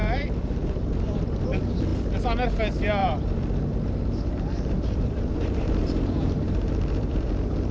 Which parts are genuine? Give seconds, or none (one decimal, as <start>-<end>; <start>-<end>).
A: 1.4-3.0; 7.3-7.7